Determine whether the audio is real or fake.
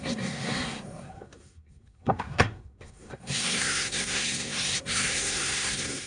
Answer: fake